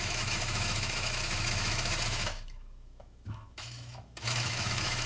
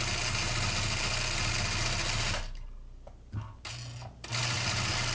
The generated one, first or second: first